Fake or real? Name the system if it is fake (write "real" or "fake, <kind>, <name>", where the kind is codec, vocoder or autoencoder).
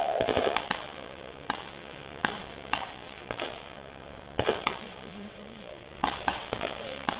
fake, vocoder, WaveNeXt